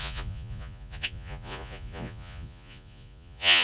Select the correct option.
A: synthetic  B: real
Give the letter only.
A